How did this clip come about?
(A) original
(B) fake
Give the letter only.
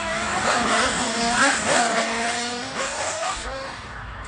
B